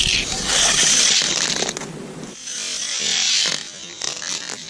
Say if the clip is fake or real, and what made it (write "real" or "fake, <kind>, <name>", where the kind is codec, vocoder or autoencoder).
real